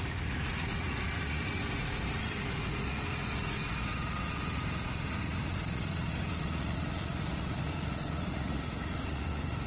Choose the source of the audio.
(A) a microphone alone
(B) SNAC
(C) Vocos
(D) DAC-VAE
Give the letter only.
C